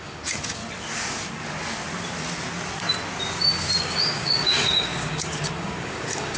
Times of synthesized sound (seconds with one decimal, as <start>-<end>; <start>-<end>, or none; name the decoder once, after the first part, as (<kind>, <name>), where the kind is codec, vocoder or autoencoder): 0.0-0.6 (codec, DAC); 3.8-6.4